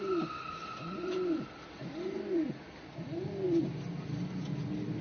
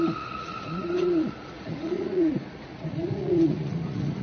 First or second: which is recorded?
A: first